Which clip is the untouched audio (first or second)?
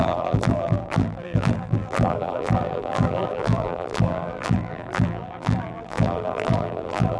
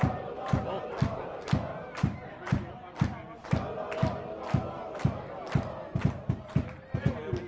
second